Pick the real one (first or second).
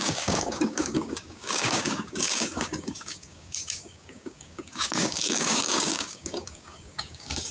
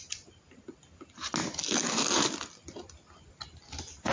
second